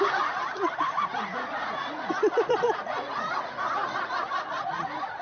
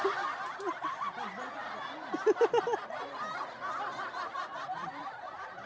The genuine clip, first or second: second